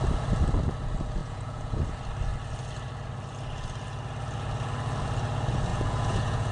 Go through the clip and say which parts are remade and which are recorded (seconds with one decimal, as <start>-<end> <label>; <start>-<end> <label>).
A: 0.0-1.2 recorded; 1.2-1.8 remade; 1.8-5.7 recorded; 5.7-6.5 remade